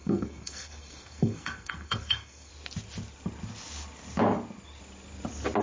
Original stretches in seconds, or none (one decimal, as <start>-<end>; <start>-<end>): 2.5-5.6

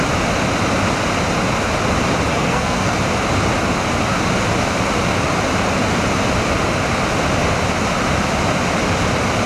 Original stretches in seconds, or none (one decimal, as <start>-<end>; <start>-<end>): 0.0-2.3; 3.0-9.5

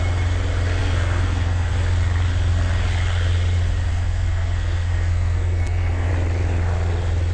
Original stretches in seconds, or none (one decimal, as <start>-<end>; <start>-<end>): 0.0-0.8; 1.7-3.9; 6.1-7.3

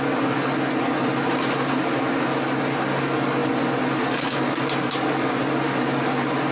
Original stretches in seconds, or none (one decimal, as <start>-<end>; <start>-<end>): 0.0-6.5

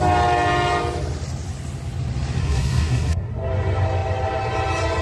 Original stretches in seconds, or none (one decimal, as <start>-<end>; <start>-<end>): 0.0-2.4; 3.3-5.0

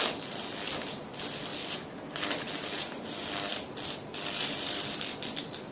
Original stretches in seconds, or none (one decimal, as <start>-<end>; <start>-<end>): 0.0-5.7

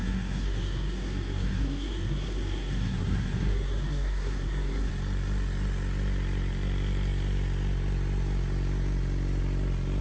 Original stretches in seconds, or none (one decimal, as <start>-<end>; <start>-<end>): 4.9-10.0